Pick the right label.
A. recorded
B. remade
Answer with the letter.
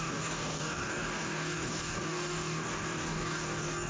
B